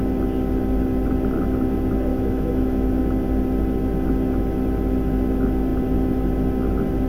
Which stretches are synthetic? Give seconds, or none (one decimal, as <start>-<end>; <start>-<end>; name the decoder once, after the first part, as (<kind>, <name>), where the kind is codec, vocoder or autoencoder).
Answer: 2.1-3.0 (autoencoder, DAC-VAE)